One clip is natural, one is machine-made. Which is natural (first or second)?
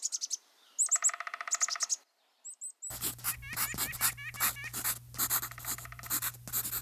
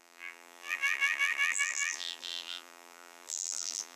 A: first